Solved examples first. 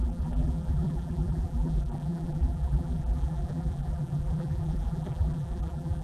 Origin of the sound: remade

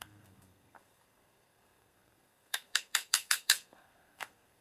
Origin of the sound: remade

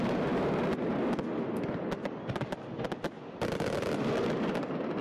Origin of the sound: recorded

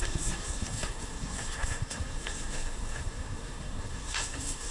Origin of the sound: remade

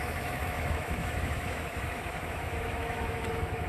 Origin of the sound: remade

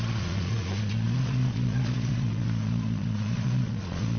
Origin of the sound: remade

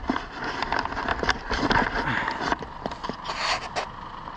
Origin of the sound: recorded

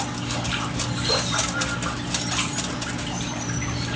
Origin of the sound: recorded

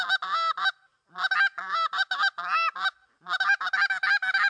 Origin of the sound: recorded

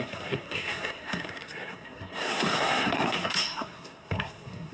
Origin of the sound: remade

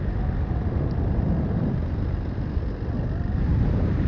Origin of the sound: recorded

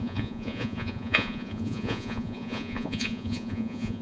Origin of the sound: remade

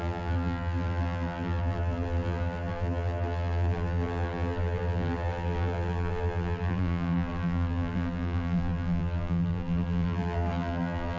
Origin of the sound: remade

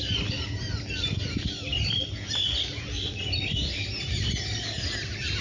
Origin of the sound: recorded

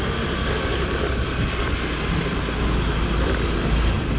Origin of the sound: recorded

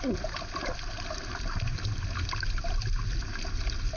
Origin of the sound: recorded